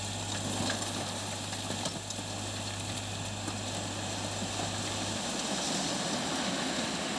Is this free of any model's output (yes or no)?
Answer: yes